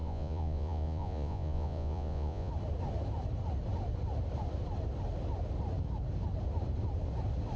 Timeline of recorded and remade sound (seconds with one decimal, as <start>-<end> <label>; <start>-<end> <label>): 0.0-2.5 remade; 2.5-7.6 recorded